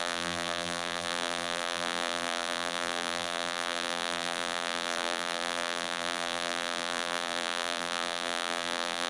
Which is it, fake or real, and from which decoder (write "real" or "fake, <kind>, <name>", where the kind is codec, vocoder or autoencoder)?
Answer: fake, vocoder, BigVGAN v2